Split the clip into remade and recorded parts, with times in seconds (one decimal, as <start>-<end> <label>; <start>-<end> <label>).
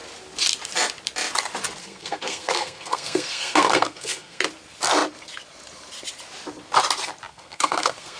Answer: 0.0-1.8 recorded; 1.8-4.4 remade; 4.4-7.3 recorded; 7.3-8.2 remade